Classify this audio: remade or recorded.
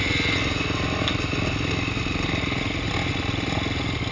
recorded